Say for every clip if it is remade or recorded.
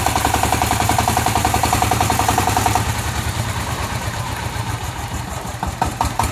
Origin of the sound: remade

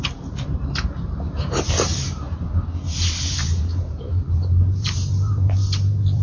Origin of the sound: remade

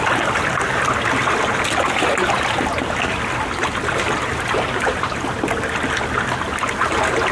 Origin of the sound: recorded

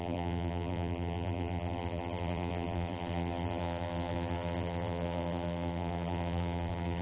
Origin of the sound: remade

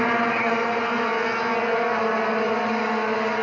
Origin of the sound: recorded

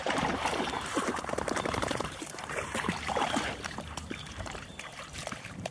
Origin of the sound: remade